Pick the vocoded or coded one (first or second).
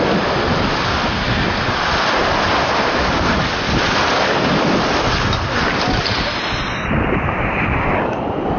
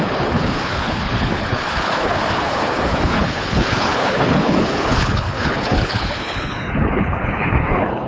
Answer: second